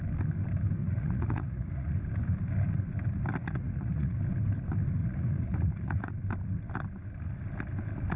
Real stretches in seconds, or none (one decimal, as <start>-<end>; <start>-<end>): 0.0-0.8; 1.9-3.4; 4.2-5.0; 6.1-8.2